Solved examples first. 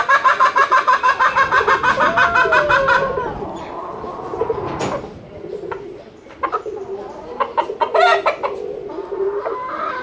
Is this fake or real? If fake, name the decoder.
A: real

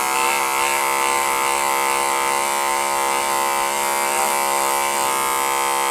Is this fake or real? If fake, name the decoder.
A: real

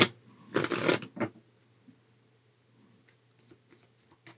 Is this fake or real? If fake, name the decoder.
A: real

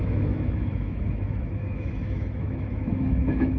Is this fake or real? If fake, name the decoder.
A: fake, autoencoder, DAC-VAE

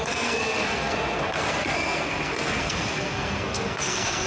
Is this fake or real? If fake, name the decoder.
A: fake, codec, SNAC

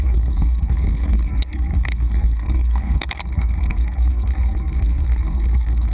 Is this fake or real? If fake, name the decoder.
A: fake, codec, SNAC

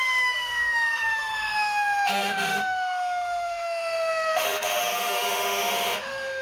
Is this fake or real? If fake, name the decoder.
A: fake, autoencoder, DAC-VAE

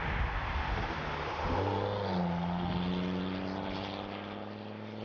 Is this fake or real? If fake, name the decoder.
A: real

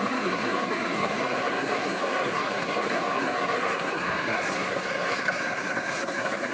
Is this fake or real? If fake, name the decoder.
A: fake, codec, SNAC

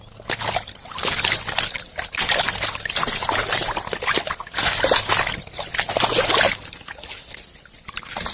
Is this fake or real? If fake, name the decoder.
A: real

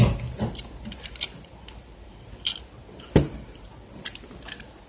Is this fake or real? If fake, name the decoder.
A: real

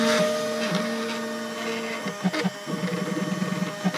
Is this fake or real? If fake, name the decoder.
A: real